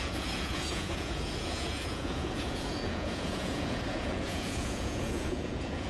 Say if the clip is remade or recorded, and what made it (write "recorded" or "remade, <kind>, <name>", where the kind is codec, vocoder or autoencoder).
remade, vocoder, Vocos